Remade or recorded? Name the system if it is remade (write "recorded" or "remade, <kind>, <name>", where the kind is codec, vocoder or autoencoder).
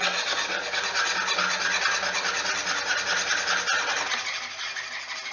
recorded